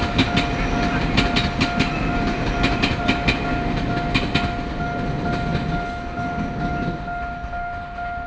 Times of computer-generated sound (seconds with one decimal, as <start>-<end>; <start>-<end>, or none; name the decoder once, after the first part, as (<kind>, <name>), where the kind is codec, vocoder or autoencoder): none